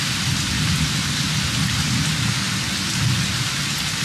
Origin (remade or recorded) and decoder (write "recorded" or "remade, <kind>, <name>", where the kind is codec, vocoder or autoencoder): recorded